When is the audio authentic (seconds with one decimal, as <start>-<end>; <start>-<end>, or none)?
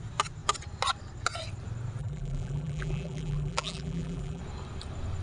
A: 0.0-2.0; 4.4-5.2